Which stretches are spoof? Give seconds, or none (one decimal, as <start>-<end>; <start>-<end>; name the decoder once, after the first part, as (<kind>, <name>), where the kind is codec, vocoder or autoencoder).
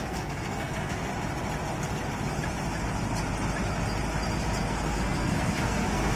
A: 0.0-1.1 (codec, SNAC); 4.6-6.2